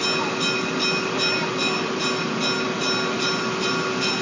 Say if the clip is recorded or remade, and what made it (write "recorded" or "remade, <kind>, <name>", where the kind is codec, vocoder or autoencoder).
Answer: recorded